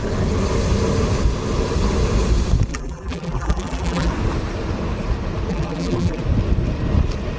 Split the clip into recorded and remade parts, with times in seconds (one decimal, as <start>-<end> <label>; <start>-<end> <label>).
0.0-2.7 recorded; 2.7-4.1 remade; 4.1-5.5 recorded; 5.5-6.2 remade; 6.2-7.4 recorded